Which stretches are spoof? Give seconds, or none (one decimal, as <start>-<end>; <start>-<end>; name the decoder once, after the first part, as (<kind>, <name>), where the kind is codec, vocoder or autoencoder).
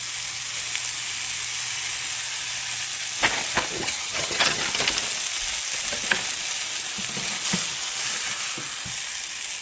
3.8-4.6 (vocoder, HiFi-GAN)